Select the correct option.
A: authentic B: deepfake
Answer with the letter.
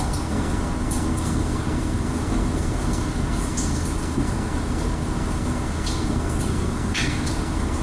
B